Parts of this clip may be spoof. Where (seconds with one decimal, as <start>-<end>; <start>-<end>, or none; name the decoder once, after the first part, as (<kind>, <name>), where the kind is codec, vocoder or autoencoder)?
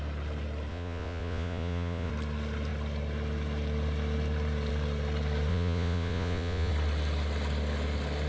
0.7-2.1 (vocoder, Vocos); 5.5-6.7